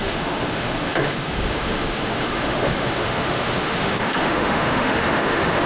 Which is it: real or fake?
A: fake